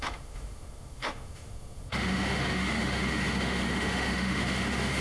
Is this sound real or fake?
fake